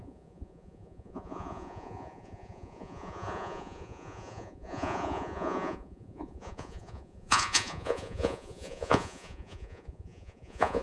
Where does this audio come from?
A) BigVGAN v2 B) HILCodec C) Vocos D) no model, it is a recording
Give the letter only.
C